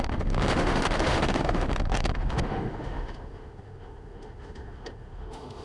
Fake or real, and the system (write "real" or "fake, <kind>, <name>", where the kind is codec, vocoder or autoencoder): fake, autoencoder, DAC-VAE